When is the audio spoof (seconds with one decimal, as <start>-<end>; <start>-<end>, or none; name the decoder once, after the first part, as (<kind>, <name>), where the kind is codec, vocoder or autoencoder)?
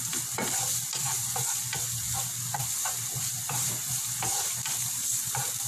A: none